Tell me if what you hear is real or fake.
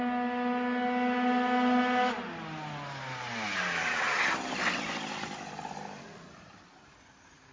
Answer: real